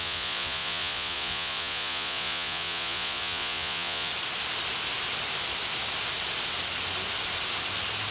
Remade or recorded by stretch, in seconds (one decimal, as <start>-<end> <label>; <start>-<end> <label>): 0.0-4.1 remade; 4.1-8.1 recorded